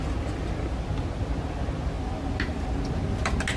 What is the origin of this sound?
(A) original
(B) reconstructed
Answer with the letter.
A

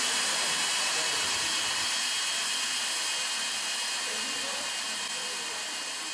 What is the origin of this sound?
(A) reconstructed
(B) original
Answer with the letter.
B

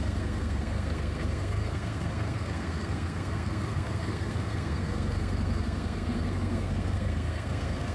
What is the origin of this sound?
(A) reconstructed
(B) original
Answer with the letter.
A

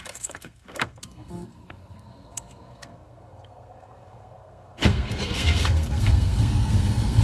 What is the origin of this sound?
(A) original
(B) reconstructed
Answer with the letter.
B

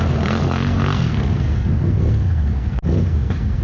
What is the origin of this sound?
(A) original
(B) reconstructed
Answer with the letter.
B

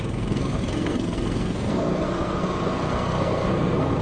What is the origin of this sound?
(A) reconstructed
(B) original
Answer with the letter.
A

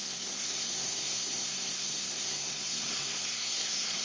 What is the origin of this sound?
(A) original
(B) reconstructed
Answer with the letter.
B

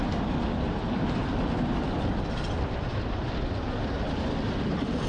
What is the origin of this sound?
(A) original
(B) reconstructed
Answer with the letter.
A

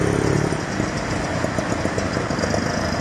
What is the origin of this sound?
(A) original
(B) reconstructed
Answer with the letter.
A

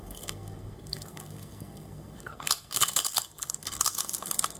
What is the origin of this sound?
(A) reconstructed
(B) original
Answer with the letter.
A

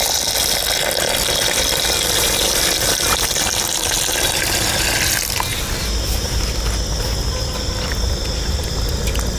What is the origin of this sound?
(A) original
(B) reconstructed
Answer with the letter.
A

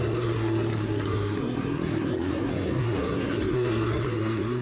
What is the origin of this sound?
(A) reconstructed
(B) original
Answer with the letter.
A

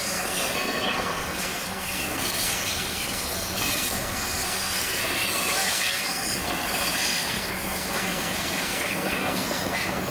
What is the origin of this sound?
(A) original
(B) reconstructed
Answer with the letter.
B